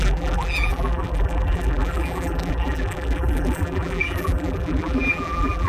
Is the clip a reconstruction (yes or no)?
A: yes